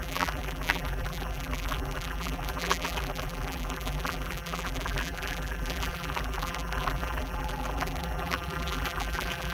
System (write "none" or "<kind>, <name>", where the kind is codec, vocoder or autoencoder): vocoder, BigVGAN v2